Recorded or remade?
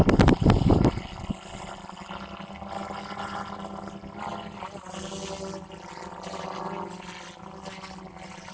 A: recorded